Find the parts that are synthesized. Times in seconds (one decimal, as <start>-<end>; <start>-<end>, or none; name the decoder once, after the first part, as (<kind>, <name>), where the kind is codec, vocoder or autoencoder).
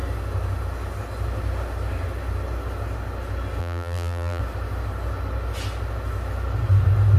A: 3.6-4.4 (vocoder, BigVGAN v2)